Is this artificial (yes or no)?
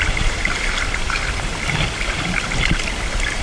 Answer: no